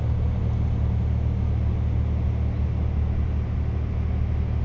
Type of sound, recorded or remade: recorded